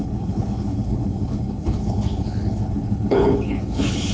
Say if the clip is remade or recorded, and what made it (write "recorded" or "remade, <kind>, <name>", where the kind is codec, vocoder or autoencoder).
remade, codec, HILCodec